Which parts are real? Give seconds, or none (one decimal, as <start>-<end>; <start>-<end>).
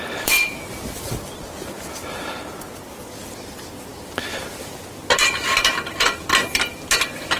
0.0-7.4